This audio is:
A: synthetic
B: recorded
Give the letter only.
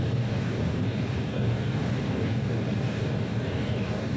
A